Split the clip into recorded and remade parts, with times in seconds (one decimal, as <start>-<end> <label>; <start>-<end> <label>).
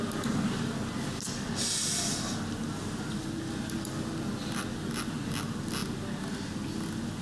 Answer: 0.0-7.2 recorded